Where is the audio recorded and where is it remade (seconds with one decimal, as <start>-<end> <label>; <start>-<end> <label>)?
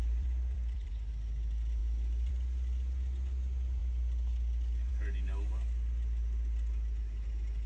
0.0-0.9 remade; 0.9-1.8 recorded; 1.8-2.3 remade; 2.3-3.8 recorded; 3.8-4.9 remade; 4.9-7.7 recorded